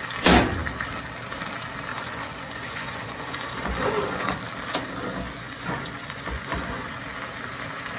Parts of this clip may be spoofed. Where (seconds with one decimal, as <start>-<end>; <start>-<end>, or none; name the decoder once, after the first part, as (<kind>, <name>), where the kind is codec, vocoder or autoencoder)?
1.9-4.4 (vocoder, Vocos); 5.4-6.9